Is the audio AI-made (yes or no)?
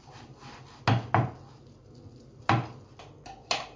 no